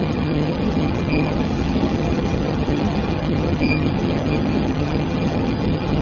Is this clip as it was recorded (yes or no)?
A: no